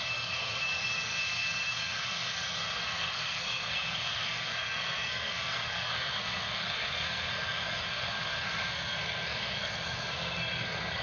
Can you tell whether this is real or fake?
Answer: fake